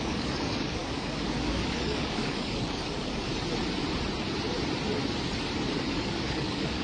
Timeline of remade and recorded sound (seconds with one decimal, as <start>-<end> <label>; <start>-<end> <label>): 0.0-3.3 remade; 3.3-5.9 recorded; 5.9-6.8 remade